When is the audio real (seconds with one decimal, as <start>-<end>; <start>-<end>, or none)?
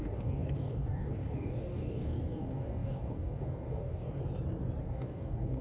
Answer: 4.2-4.8